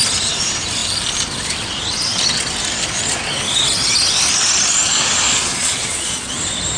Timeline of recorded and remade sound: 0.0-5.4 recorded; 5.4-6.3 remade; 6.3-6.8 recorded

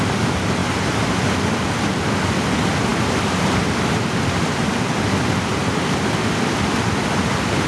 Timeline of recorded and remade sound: 0.0-7.7 recorded

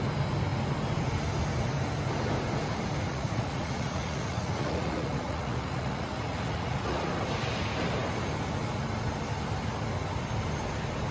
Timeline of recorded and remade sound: 0.0-3.1 recorded; 3.1-7.1 remade; 7.1-11.1 recorded